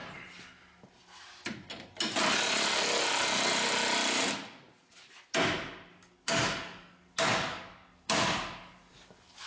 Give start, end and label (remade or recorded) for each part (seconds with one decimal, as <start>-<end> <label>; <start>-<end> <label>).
0.0-5.9 recorded; 5.9-9.5 remade